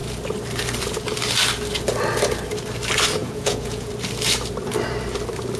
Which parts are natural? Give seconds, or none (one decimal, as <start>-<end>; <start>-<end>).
0.0-3.2; 3.9-5.6